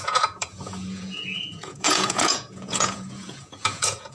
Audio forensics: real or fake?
fake